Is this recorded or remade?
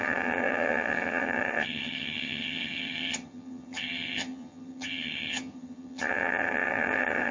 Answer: remade